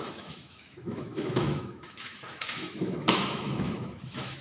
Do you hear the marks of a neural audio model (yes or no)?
yes